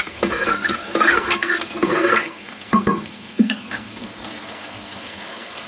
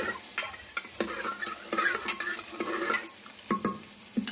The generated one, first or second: first